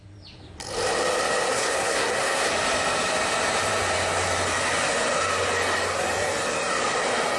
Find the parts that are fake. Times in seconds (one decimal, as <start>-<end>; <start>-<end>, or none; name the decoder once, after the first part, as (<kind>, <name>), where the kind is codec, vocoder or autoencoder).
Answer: 1.5-2.5 (codec, SNAC)